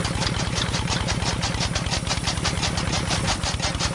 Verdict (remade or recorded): recorded